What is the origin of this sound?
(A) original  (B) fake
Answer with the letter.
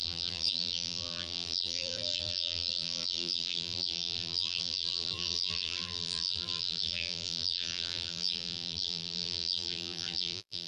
B